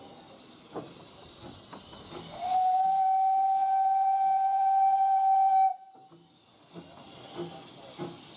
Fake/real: real